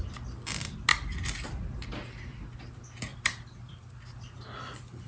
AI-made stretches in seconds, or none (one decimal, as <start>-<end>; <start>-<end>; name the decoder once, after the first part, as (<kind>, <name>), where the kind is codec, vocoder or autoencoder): 0.9-1.6 (vocoder, BigVGAN v2); 3.1-5.1